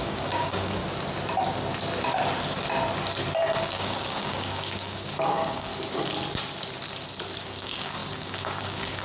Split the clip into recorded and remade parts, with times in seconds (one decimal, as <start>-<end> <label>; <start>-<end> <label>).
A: 0.0-0.8 remade; 0.8-3.6 recorded; 3.6-5.7 remade; 5.7-7.4 recorded; 7.4-9.0 remade